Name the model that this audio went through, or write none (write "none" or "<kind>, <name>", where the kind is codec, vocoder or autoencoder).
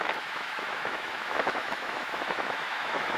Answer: autoencoder, DAC-VAE